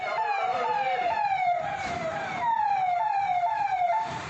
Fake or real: fake